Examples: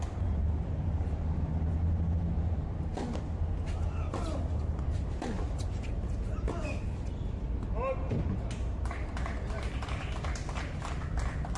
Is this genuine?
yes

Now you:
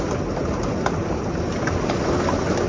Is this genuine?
yes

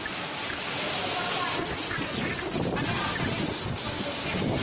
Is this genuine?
yes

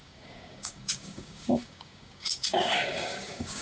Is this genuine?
no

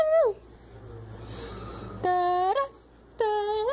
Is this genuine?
yes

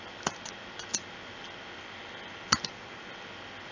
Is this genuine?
yes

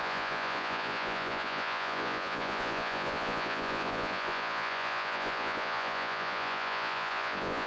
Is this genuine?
no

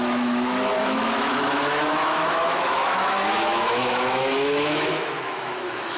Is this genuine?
no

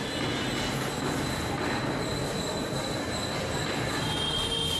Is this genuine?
yes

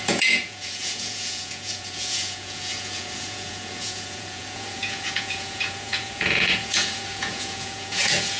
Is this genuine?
no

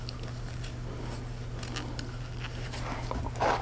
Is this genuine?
yes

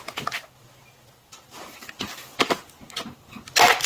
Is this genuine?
yes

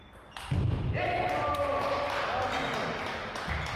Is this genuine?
yes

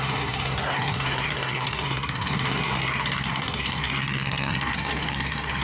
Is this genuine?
no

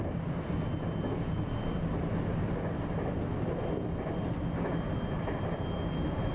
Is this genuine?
yes